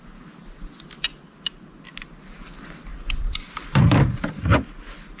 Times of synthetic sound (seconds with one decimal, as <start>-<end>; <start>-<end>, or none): 2.9-4.4